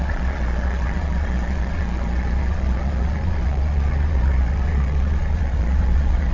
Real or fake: fake